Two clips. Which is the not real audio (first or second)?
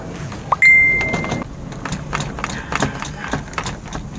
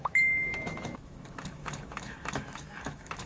second